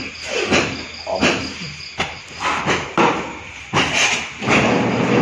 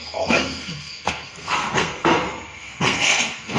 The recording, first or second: first